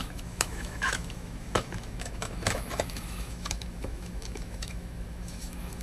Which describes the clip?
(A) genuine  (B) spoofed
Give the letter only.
B